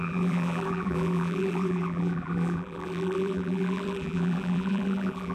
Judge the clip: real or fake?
fake